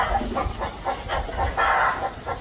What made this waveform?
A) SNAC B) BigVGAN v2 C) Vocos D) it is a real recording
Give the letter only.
D